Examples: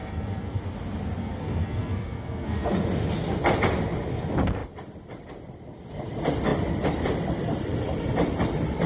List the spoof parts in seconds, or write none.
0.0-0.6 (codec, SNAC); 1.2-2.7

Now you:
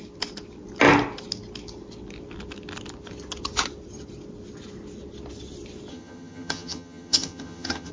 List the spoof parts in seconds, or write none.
5.9-7.9 (vocoder, HiFi-GAN)

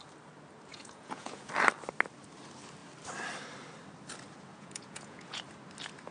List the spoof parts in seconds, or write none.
0.7-1.5 (vocoder, Vocos); 4.5-5.4